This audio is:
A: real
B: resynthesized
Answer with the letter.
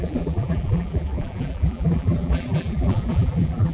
B